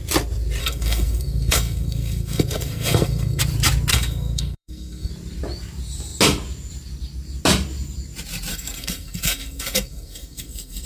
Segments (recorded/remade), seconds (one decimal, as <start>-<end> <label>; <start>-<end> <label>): 0.0-0.6 recorded; 0.6-3.4 remade; 3.4-3.9 recorded; 3.9-5.1 remade; 5.1-8.5 recorded; 8.5-10.9 remade